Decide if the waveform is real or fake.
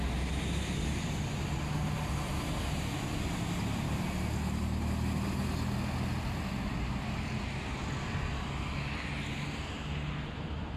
real